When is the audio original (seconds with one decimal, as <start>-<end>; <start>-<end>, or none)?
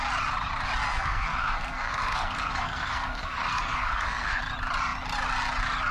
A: 0.0-0.9; 4.4-5.9